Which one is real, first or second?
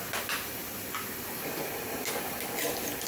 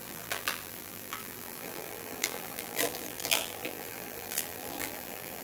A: first